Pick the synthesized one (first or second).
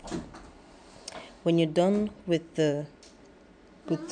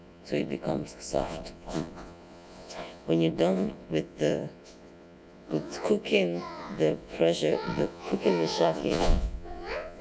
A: second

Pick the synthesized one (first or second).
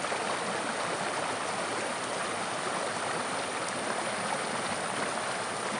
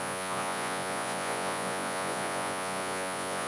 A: second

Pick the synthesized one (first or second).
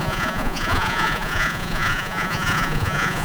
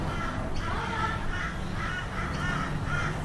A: first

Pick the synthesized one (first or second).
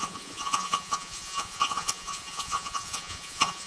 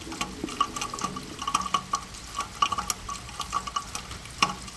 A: first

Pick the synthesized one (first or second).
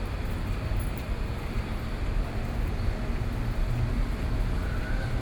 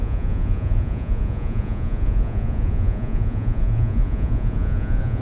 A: second